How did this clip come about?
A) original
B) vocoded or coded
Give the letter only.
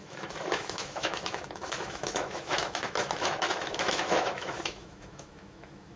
B